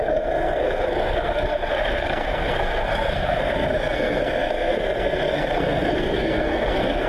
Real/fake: fake